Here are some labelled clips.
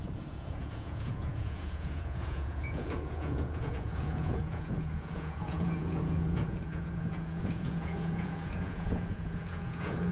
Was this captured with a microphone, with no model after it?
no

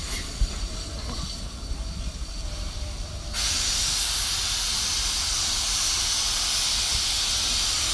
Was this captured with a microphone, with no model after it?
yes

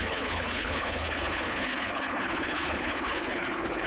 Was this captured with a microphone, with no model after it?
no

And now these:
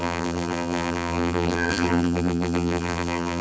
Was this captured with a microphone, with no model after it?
no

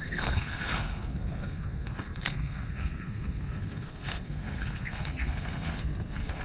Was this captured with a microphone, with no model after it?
no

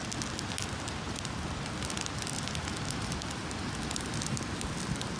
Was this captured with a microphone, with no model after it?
yes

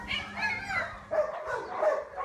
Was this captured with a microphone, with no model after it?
yes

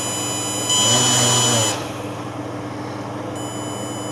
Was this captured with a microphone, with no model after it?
yes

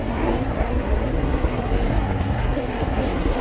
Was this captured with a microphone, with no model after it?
no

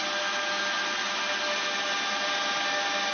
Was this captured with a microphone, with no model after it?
yes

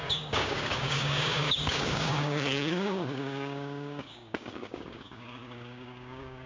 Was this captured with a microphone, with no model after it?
no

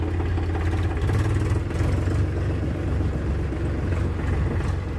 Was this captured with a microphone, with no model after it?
yes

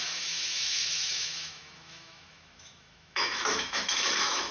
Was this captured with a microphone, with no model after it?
no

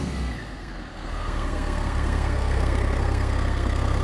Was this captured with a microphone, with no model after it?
no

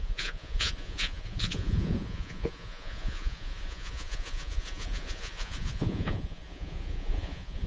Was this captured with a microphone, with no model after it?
no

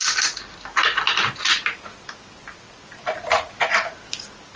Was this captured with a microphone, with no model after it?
yes